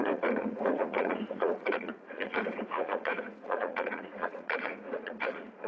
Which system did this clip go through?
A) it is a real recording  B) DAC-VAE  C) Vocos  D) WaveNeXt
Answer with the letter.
C